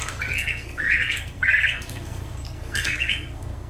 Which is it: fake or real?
fake